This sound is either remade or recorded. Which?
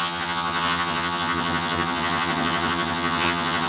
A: remade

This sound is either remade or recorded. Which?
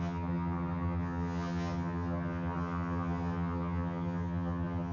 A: remade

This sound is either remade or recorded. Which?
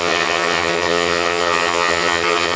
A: remade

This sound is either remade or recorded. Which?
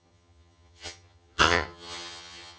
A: remade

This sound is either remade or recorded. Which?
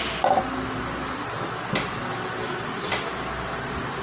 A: recorded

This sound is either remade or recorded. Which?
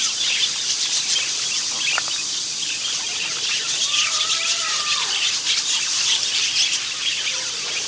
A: recorded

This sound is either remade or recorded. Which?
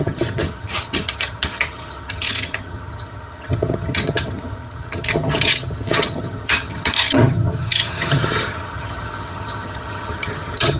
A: remade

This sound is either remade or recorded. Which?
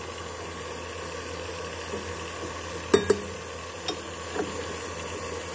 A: recorded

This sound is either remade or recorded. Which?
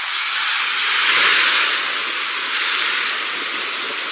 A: recorded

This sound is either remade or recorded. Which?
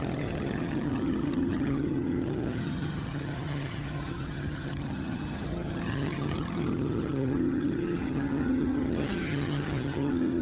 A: remade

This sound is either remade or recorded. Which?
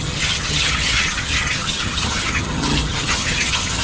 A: remade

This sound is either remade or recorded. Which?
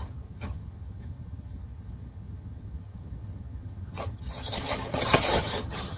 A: remade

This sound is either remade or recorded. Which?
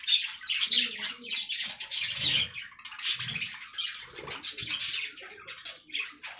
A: recorded